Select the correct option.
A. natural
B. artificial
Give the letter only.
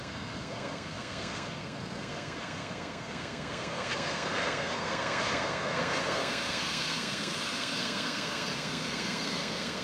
B